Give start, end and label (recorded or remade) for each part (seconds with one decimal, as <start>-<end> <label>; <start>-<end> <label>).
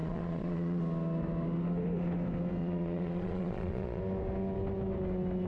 0.0-0.8 remade; 0.8-2.6 recorded; 2.6-4.0 remade; 4.0-5.5 recorded